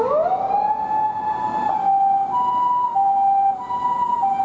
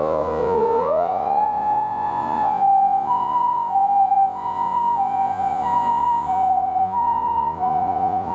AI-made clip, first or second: second